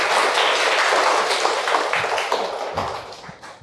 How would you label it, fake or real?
real